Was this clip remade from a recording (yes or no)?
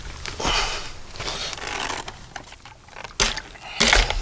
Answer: no